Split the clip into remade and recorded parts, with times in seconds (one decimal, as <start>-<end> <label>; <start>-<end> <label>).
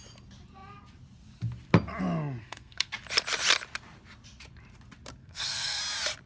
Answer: 0.0-2.4 recorded; 2.4-2.9 remade; 2.9-5.2 recorded; 5.2-5.8 remade; 5.8-6.3 recorded